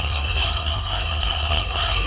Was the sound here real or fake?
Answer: fake